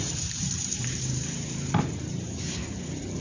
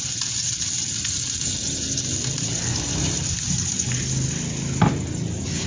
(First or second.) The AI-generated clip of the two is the first